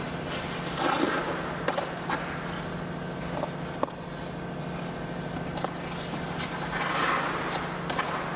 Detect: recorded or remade recorded